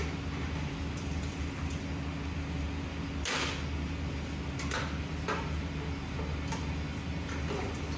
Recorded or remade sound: recorded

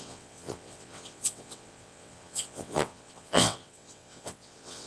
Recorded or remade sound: remade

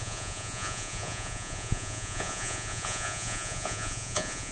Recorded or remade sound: remade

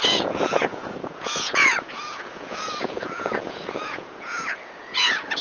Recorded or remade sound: remade